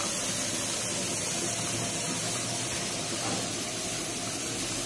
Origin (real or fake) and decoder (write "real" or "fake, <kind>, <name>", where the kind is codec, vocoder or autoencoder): real